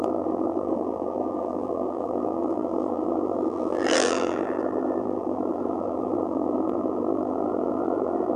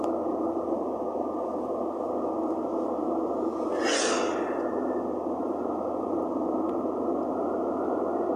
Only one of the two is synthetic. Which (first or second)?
first